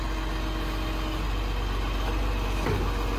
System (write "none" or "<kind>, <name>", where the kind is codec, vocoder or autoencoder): none